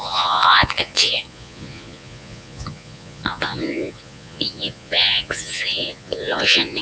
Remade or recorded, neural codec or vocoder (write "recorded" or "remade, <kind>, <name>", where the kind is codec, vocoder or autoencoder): remade, vocoder, Vocos